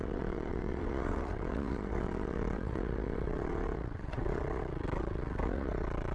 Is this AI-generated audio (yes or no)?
yes